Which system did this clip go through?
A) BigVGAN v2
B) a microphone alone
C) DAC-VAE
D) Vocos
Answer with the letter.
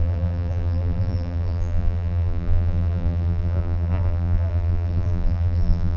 A